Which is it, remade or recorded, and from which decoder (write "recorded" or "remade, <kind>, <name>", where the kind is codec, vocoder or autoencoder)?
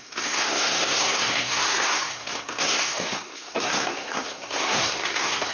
remade, codec, SNAC